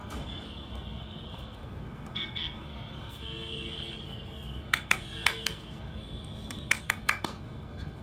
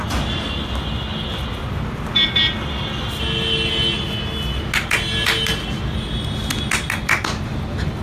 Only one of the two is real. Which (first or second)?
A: second